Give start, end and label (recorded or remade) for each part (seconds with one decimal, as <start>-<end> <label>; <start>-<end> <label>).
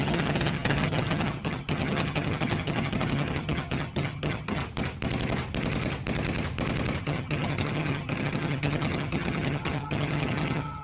0.0-4.6 remade; 4.6-7.0 recorded; 7.0-10.8 remade